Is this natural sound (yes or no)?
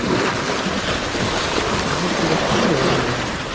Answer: yes